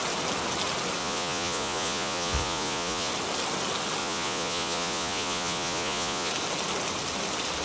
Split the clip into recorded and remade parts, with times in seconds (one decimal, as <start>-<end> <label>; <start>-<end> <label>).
0.0-1.0 recorded; 1.0-3.1 remade; 3.1-4.0 recorded; 4.0-6.3 remade; 6.3-7.6 recorded

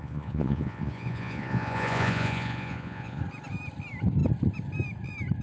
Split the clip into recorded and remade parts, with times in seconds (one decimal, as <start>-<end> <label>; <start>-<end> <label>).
0.0-3.2 remade; 3.2-5.4 recorded

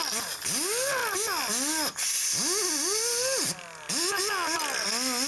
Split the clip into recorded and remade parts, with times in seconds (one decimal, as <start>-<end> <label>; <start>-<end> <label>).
0.0-5.3 recorded

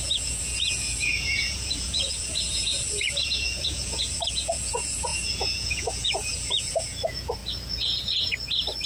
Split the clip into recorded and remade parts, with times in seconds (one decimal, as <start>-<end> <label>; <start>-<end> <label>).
0.0-7.4 remade; 7.4-8.9 recorded

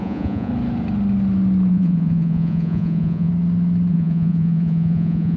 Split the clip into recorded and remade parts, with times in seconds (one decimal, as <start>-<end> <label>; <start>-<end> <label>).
0.0-0.5 remade; 0.5-1.7 recorded; 1.7-3.3 remade; 3.3-3.9 recorded; 3.9-5.4 remade

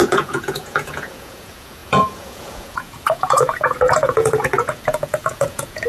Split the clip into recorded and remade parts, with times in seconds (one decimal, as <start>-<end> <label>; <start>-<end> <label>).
0.0-5.9 remade